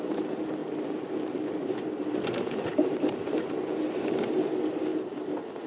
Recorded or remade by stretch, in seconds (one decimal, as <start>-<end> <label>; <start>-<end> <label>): 0.0-5.7 recorded